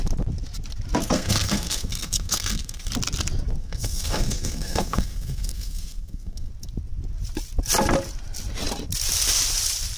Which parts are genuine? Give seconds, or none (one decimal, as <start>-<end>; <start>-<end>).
0.0-1.0; 2.9-3.6; 6.5-10.0